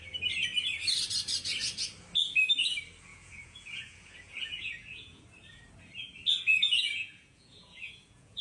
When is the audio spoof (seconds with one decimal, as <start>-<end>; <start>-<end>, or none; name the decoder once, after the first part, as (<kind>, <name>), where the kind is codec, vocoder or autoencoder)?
3.1-5.2 (vocoder, Vocos); 6.5-8.4